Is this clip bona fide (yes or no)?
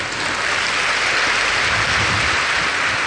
yes